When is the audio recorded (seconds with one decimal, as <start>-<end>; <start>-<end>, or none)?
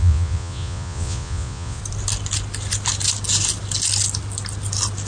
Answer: 1.8-5.1